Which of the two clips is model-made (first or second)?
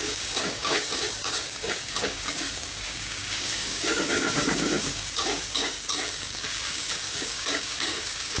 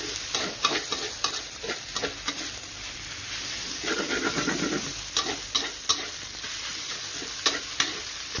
first